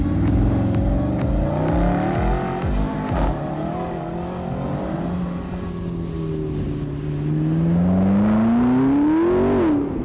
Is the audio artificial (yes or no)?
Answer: no